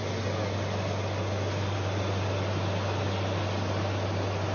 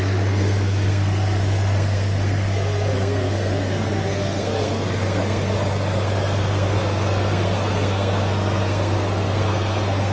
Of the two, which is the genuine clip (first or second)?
first